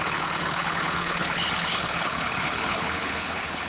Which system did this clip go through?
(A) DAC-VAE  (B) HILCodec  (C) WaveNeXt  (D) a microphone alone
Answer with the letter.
B